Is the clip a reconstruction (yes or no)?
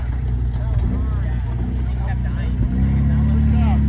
no